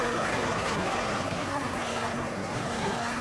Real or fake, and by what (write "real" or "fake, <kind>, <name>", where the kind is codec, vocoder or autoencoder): fake, codec, SNAC